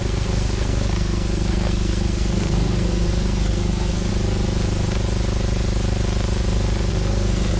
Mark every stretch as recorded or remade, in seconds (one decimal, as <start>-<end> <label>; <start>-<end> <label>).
0.0-4.1 remade; 4.1-6.9 recorded; 6.9-7.6 remade